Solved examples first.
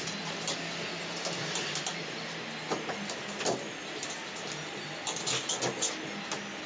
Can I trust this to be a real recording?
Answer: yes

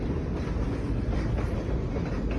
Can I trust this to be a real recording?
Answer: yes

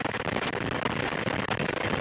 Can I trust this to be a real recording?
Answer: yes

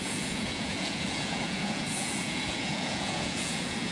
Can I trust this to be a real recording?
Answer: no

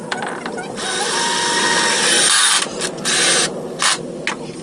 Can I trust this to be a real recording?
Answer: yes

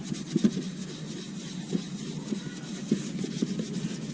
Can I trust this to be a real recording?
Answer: yes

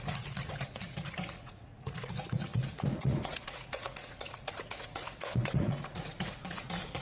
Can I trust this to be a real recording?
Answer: no